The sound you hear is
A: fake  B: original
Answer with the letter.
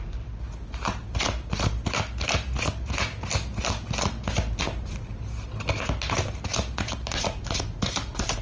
B